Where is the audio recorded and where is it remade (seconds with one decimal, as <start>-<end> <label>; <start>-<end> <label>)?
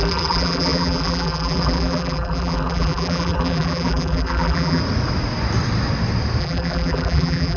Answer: 0.0-4.8 remade; 4.8-6.4 recorded; 6.4-7.6 remade